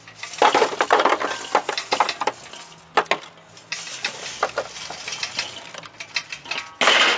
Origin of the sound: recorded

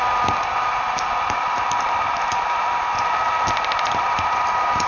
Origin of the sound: recorded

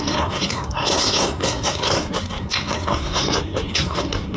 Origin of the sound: remade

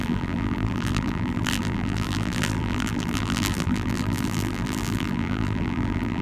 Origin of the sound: remade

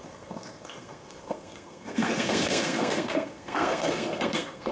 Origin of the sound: remade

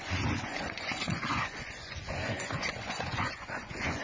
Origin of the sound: remade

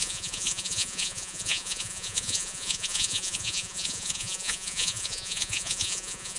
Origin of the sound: remade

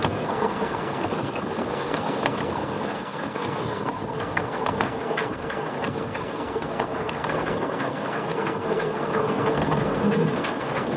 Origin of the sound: remade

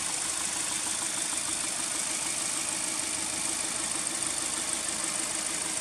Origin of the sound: recorded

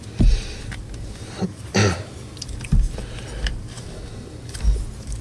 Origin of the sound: recorded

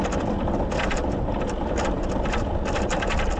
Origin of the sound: remade